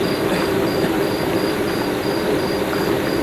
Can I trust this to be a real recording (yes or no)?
yes